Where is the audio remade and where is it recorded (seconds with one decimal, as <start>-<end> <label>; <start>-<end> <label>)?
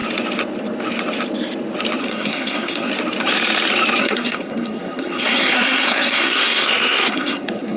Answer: 0.0-2.0 recorded; 2.0-2.9 remade; 2.9-4.0 recorded; 4.0-7.8 remade